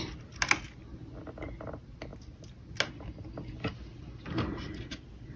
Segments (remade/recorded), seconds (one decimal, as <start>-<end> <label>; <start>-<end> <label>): 0.0-1.0 recorded; 1.0-1.5 remade; 1.5-5.4 recorded